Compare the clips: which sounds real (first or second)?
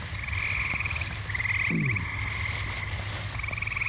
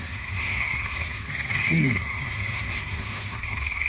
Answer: first